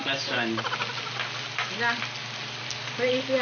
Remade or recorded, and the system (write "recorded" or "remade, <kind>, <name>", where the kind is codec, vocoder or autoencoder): recorded